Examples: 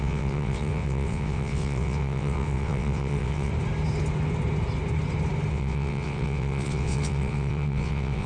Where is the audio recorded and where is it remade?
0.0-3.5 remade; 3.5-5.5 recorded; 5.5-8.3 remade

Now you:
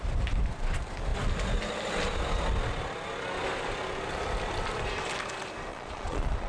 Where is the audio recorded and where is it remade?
0.0-5.7 recorded; 5.7-6.5 remade

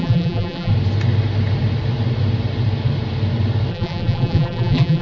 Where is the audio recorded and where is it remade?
0.0-0.7 remade; 0.7-3.7 recorded; 3.7-5.0 remade

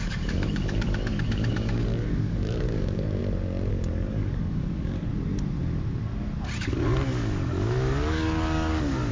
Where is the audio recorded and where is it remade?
0.0-3.2 remade; 3.2-3.7 recorded; 3.7-5.1 remade; 5.1-6.6 recorded; 6.6-9.1 remade

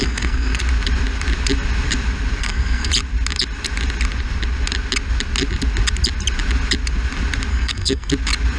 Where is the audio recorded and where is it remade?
0.0-0.6 remade; 0.6-2.4 recorded; 2.4-2.9 remade; 2.9-7.5 recorded; 7.5-8.1 remade; 8.1-8.6 recorded

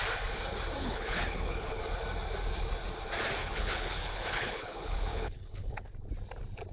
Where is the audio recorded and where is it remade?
0.0-0.8 recorded; 0.8-1.8 remade; 1.8-3.4 recorded; 3.4-5.9 remade; 5.9-6.7 recorded